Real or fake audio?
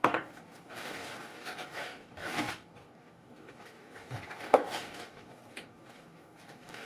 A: fake